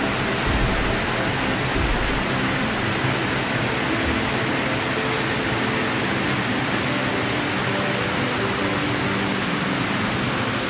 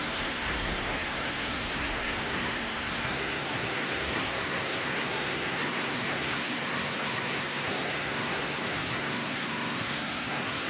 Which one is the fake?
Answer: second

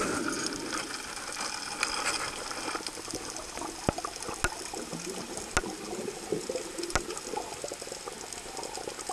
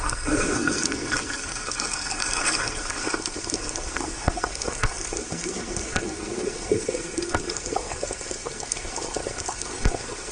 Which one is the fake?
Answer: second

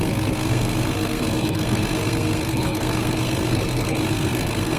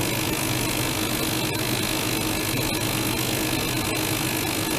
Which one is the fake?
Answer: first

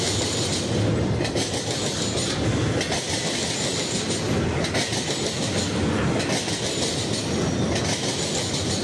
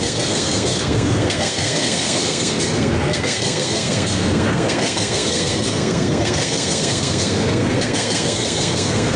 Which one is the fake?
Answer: second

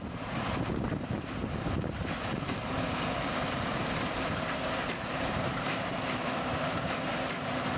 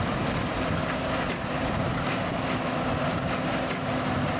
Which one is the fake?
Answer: first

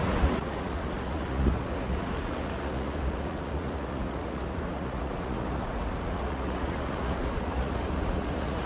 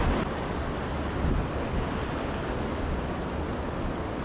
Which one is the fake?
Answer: first